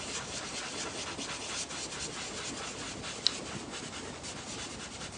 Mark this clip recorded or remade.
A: recorded